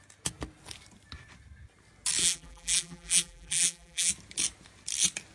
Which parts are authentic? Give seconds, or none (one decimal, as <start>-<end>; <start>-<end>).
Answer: 0.0-2.2; 4.1-5.3